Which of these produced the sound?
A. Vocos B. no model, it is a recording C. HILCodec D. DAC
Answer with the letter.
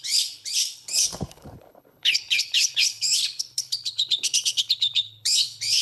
C